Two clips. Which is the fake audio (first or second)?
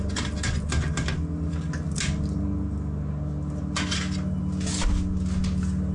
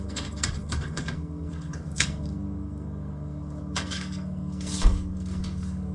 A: second